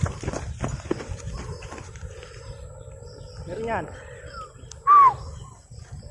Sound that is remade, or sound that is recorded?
recorded